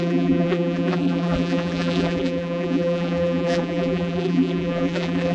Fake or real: fake